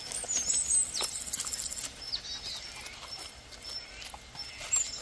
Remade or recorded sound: recorded